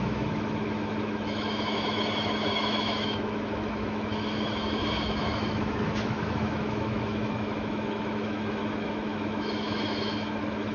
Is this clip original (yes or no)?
no